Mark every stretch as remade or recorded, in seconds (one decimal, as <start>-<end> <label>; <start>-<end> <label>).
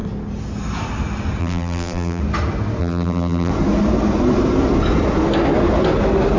0.0-1.4 recorded; 1.4-2.2 remade; 2.2-2.8 recorded; 2.8-3.5 remade; 3.5-6.4 recorded